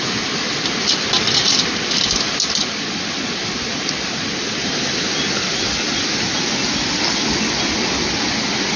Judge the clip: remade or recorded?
recorded